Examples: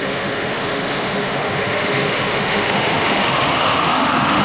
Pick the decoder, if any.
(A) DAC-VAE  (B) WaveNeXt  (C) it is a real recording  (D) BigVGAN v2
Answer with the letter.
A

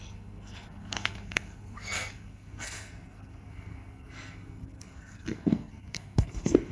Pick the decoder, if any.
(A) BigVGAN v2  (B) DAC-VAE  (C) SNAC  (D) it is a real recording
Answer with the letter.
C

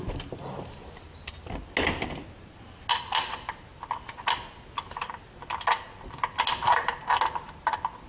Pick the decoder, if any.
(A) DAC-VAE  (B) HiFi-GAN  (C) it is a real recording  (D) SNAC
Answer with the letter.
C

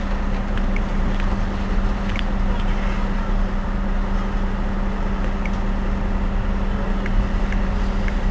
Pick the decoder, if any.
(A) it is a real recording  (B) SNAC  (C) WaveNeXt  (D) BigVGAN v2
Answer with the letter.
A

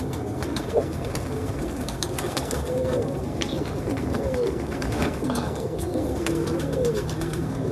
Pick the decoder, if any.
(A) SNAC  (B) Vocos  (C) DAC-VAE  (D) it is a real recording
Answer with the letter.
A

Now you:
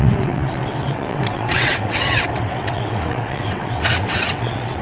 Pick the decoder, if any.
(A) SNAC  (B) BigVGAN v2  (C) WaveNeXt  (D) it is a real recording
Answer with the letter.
C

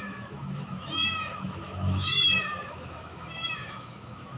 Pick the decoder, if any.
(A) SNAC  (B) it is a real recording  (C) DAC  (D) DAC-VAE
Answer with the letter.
D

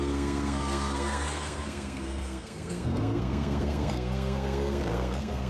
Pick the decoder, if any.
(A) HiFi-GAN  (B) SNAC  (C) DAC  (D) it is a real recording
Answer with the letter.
B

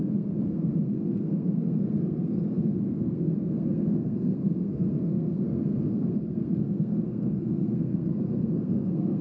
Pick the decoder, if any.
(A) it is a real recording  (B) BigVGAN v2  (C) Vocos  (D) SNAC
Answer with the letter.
D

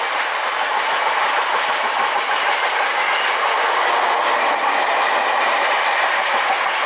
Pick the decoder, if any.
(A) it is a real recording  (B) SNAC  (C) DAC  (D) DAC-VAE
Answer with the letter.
A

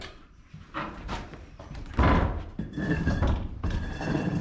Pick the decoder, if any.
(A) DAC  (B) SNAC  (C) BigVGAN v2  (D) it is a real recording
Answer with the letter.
C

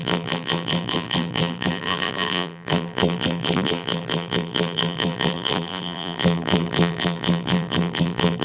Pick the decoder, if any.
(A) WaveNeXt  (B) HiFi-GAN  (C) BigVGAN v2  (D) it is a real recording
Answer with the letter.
C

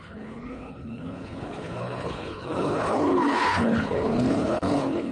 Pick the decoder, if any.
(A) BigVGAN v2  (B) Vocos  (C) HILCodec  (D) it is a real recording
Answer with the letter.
C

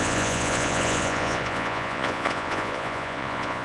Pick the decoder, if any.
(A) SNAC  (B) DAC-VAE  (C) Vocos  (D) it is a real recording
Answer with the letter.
C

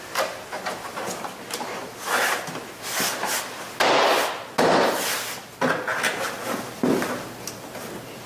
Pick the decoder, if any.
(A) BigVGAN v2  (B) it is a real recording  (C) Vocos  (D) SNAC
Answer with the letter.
B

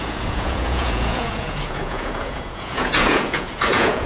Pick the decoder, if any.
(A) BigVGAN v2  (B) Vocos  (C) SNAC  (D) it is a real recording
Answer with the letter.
B